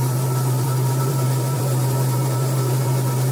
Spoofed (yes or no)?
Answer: yes